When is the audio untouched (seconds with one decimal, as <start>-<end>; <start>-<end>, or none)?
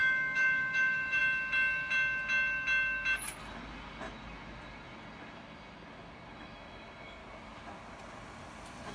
1.2-6.3; 7.2-8.9